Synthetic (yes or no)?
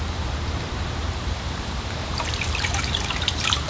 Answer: yes